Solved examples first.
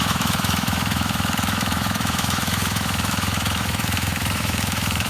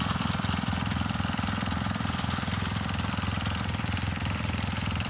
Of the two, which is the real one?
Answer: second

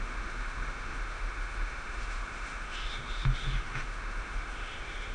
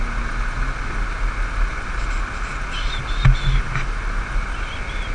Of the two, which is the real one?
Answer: second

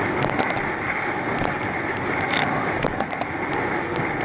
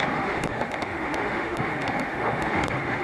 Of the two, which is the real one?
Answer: first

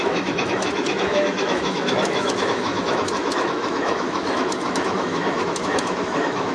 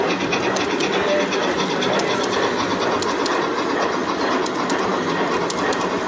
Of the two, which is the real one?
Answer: second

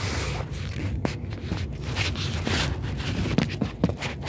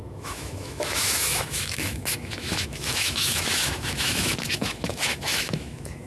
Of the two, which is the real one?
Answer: first